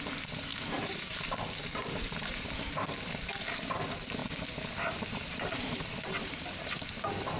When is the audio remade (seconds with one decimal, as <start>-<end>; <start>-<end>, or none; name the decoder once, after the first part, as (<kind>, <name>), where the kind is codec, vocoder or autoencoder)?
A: 0.5-1.4 (vocoder, BigVGAN v2); 1.8-3.2; 4.2-6.3